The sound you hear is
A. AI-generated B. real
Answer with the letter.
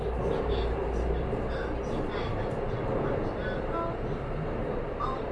B